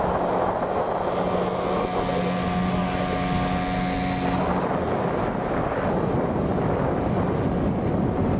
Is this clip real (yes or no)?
yes